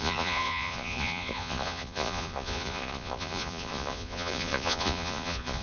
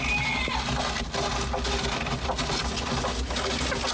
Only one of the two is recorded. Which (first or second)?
second